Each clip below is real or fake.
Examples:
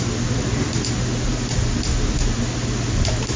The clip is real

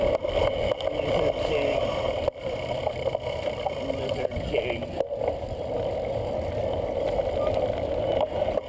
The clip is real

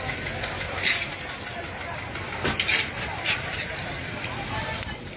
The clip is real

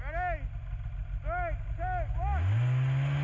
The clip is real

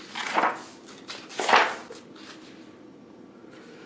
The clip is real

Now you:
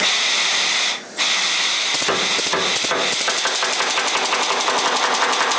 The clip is real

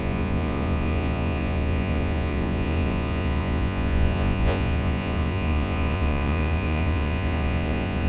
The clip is fake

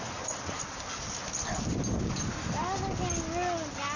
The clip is real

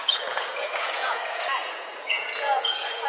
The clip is fake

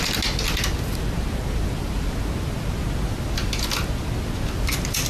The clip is real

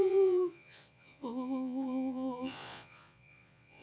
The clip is fake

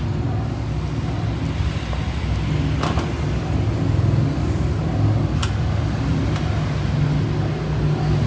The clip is real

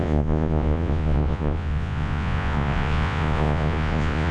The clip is fake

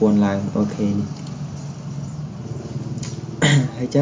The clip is real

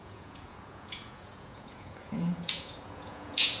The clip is fake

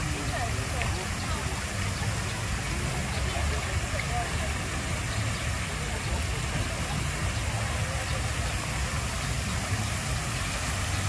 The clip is real